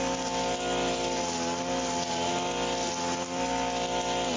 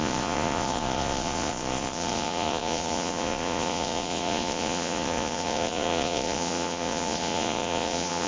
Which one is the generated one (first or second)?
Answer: second